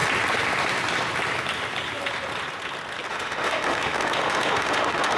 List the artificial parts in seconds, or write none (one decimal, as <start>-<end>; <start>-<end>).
3.1-5.2